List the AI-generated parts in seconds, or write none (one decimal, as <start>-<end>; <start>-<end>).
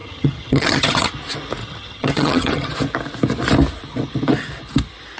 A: 0.0-1.1; 1.6-2.7